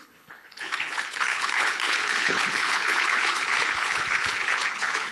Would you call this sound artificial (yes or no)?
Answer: yes